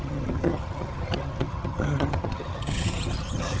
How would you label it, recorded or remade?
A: remade